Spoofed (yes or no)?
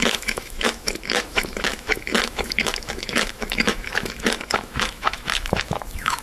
yes